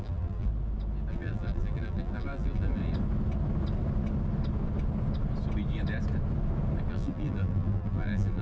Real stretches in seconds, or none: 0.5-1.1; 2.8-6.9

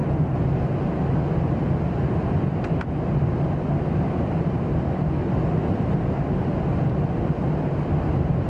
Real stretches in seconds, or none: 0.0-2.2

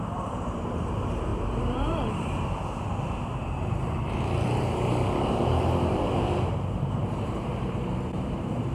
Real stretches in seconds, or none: none

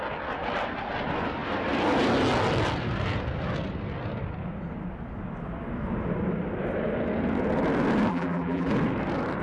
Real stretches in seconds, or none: 0.0-8.1; 8.7-9.4

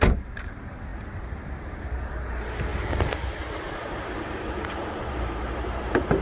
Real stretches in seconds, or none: 2.7-3.4

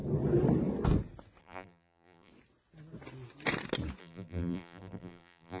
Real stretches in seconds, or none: 0.0-1.4; 2.3-4.0